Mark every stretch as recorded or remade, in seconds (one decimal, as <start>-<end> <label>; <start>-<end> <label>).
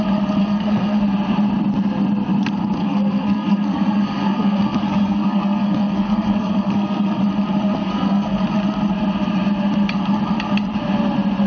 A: 0.0-0.4 recorded; 0.4-1.0 remade; 1.0-2.8 recorded; 2.8-7.2 remade; 7.2-7.8 recorded; 7.8-8.4 remade; 8.4-11.5 recorded